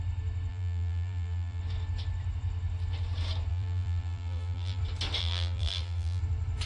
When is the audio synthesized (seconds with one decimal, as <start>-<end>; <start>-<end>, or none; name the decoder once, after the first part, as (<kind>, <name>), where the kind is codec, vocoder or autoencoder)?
0.5-1.6 (vocoder, BigVGAN v2); 3.5-4.8; 5.2-6.2